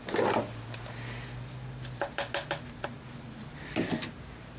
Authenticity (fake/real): real